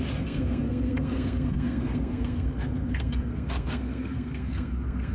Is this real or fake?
fake